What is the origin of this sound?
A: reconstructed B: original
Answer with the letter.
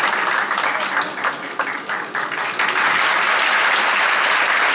B